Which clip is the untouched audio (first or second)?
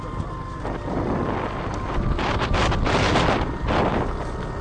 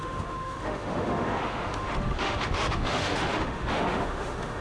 first